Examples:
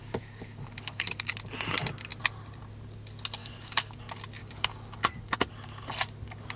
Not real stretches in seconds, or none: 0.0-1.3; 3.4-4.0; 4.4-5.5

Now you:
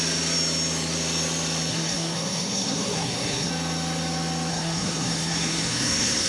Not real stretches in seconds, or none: 1.7-3.5; 4.5-6.3

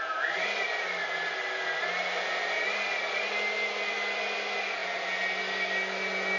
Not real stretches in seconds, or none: none

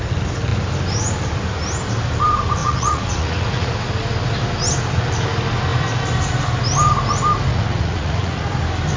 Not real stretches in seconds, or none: 2.6-3.7; 7.5-8.4

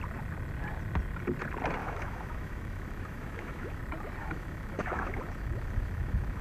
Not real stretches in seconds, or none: 1.8-3.8; 4.2-6.4

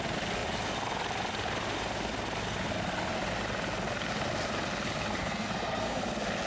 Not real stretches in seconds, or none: 5.2-6.0

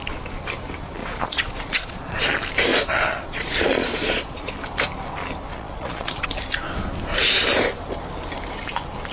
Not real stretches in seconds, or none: 1.0-2.2; 2.7-4.5; 5.5-6.2

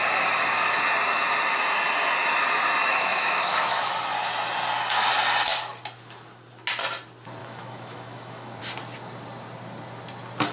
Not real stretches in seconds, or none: 2.9-3.9; 7.4-8.6